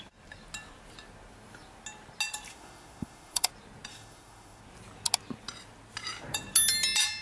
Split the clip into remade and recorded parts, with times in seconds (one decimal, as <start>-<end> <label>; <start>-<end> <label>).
0.0-2.5 recorded; 2.5-3.5 remade; 3.5-3.9 recorded; 3.9-4.6 remade; 4.6-7.2 recorded